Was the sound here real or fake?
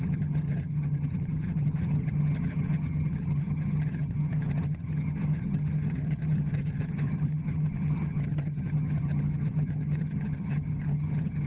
fake